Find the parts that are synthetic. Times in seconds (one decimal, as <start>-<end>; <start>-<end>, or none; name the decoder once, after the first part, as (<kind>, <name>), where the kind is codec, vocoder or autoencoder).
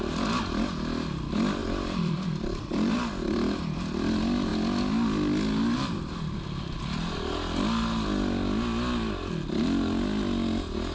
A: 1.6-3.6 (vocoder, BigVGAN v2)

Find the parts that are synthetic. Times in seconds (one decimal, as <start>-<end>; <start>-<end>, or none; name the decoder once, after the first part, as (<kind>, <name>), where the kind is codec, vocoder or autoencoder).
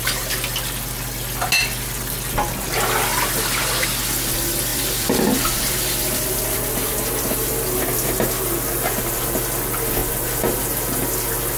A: 3.1-3.9 (vocoder, BigVGAN v2); 4.7-7.8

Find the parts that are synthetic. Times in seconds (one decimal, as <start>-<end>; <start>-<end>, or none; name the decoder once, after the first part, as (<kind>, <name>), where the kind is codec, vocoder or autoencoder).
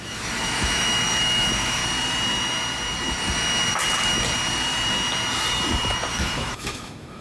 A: 0.0-1.8 (autoencoder, DAC-VAE); 6.1-7.2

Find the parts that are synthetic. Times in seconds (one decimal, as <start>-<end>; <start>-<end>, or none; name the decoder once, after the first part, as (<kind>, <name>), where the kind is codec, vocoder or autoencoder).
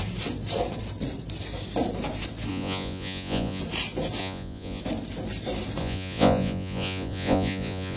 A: 2.5-3.6 (vocoder, Vocos); 4.2-4.8; 5.8-8.0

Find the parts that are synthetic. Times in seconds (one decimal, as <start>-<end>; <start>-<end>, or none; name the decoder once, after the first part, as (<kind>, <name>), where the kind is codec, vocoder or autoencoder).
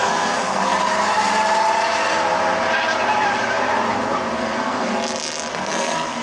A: 0.0-0.7 (codec, SNAC); 4.4-4.9; 5.5-6.2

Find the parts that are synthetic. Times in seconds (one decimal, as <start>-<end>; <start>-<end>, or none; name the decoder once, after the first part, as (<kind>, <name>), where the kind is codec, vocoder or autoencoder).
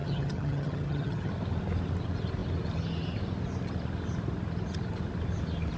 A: 0.0-1.3 (vocoder, HiFi-GAN)